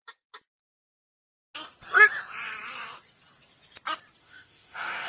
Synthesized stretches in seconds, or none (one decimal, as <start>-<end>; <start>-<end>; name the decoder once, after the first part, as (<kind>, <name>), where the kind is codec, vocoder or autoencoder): 4.2-5.1 (autoencoder, DAC-VAE)